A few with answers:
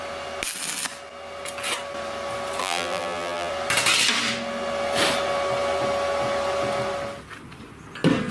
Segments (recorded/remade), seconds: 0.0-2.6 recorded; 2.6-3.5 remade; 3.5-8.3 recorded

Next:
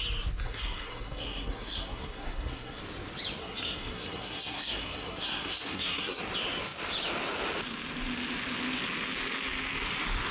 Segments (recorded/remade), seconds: 0.0-0.4 recorded; 0.4-2.8 remade; 2.8-3.4 recorded; 3.4-6.2 remade; 6.2-10.3 recorded

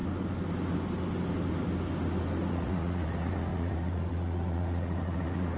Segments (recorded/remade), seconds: 0.0-2.5 recorded; 2.5-5.6 remade